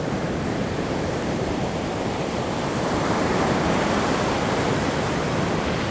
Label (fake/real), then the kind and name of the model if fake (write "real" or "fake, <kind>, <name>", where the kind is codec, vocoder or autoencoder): fake, vocoder, BigVGAN v2